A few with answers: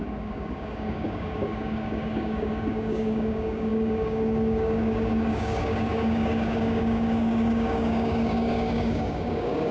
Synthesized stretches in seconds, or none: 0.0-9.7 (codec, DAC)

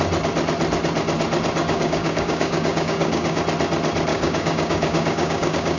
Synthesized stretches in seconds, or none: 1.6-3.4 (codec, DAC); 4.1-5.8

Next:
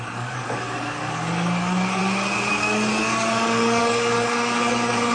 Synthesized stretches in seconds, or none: 0.0-2.0 (codec, DAC); 2.5-5.1

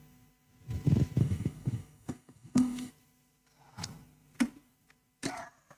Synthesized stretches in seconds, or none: 1.2-2.9 (codec, DAC)

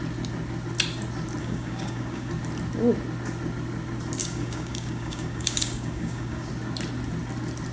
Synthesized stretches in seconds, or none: 1.4-2.3 (codec, DAC); 4.2-6.5